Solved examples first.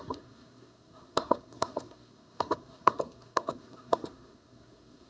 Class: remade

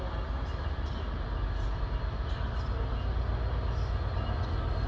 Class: recorded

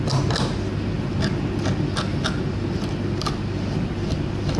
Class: recorded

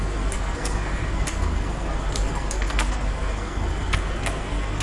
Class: remade